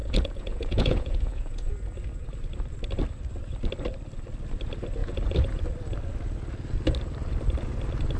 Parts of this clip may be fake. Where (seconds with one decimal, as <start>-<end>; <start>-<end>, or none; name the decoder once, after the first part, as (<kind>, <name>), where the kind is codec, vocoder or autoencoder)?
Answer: 0.0-1.7 (vocoder, Vocos); 5.0-5.6